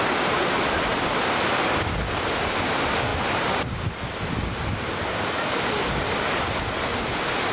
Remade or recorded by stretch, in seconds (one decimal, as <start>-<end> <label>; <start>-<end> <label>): 0.0-7.5 recorded